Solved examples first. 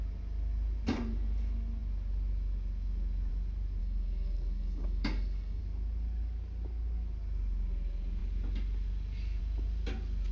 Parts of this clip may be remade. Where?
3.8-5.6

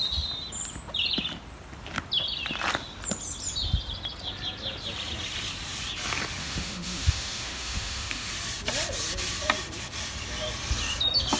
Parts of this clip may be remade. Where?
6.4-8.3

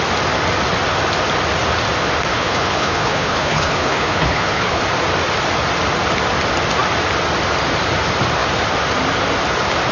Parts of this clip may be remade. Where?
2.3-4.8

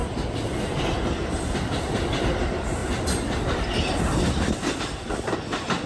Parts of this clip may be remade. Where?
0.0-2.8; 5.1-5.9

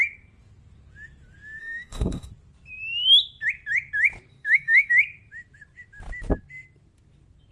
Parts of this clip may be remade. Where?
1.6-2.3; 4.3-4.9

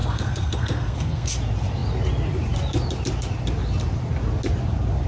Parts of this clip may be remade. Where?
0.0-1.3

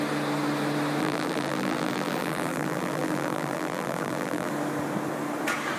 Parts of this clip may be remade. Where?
1.0-4.5